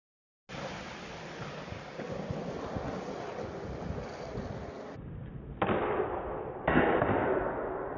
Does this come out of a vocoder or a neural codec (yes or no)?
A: no